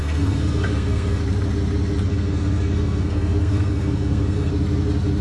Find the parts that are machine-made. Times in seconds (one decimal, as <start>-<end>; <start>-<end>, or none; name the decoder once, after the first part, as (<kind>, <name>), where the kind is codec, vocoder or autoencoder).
0.0-1.2 (codec, SNAC); 2.1-4.5